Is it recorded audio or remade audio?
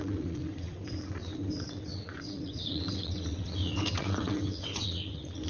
remade